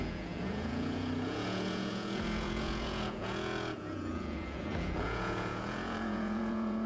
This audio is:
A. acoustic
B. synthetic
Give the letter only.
B